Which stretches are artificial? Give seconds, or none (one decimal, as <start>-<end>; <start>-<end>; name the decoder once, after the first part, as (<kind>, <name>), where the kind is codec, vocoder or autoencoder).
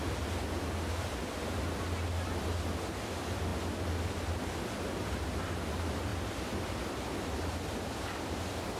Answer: none